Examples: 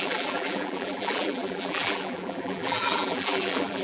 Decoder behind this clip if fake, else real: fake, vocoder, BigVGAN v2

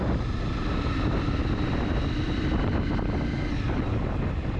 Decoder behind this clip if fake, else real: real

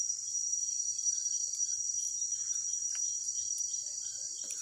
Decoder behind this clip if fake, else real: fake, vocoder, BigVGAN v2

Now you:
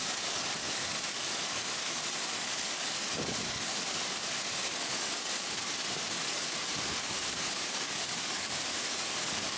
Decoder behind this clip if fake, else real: fake, codec, DAC